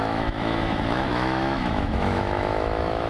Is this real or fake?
fake